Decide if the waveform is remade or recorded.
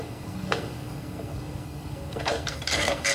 remade